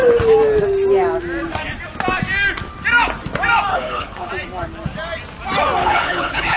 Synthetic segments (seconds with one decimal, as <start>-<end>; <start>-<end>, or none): 3.7-4.3; 5.8-6.6